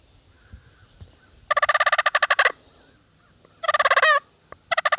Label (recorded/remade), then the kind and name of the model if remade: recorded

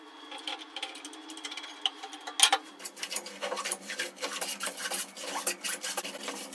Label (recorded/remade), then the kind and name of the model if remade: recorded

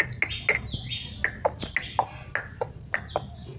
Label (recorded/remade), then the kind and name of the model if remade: recorded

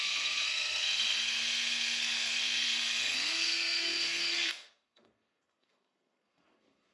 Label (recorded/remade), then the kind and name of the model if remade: remade, codec, SNAC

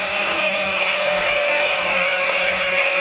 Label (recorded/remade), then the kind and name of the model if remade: remade, codec, DAC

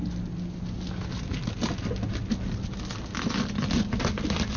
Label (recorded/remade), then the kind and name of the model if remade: recorded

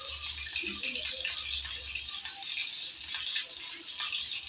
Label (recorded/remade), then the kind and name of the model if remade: recorded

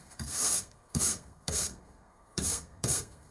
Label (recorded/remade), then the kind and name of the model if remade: remade, codec, SNAC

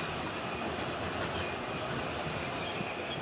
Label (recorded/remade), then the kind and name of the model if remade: recorded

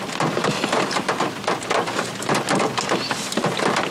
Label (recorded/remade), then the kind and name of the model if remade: recorded